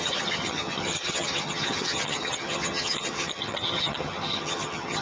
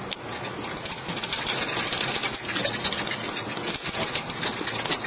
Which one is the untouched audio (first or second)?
second